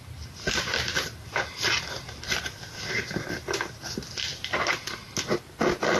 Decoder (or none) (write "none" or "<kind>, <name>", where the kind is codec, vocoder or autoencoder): none